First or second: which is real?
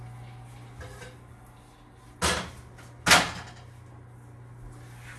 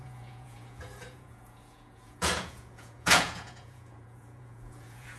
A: first